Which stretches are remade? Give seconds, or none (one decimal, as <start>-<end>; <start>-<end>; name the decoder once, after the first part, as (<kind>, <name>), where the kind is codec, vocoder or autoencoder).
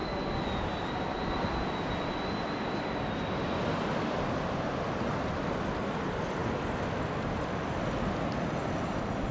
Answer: none